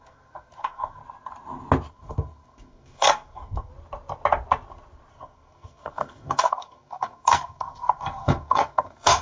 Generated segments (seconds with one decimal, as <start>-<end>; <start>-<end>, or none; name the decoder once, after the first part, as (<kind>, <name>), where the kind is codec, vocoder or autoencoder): 0.0-1.0 (codec, SNAC); 1.9-3.7; 5.1-9.2